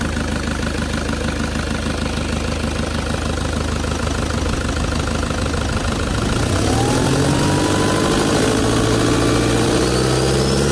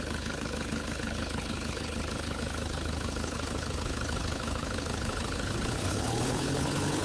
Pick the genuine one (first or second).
first